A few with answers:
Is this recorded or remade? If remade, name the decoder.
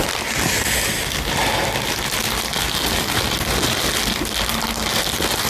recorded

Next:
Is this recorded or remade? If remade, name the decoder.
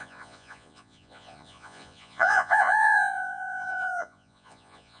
remade, vocoder, Vocos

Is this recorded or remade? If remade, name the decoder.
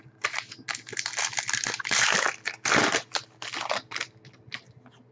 recorded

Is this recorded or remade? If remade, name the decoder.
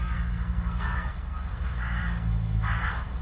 remade, codec, SNAC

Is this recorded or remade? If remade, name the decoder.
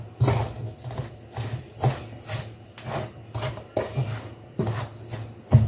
recorded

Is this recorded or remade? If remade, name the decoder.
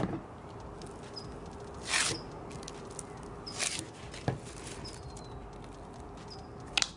recorded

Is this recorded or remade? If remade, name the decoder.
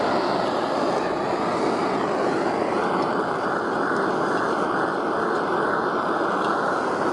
recorded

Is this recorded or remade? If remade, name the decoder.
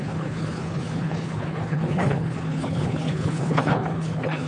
remade, codec, HILCodec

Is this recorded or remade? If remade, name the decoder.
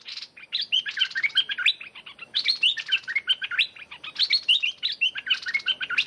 recorded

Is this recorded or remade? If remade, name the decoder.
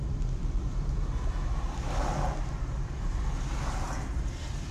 recorded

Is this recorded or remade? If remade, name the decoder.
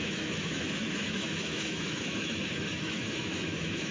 remade, autoencoder, DAC-VAE